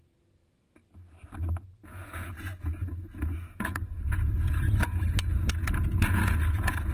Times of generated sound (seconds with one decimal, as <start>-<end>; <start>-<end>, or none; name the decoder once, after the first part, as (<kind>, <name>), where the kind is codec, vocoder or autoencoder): 0.0-0.4 (vocoder, Vocos); 1.6-6.9